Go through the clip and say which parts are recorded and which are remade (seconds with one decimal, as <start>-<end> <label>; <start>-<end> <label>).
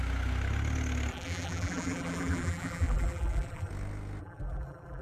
0.0-1.1 recorded; 1.1-3.7 remade; 3.7-4.2 recorded; 4.2-5.0 remade